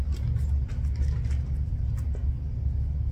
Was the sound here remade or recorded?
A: recorded